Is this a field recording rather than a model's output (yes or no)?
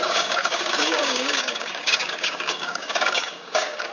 no